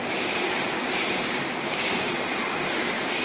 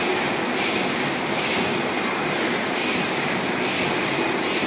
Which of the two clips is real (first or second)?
second